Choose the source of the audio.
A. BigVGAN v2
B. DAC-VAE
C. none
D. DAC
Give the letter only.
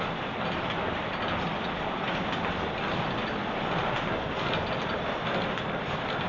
C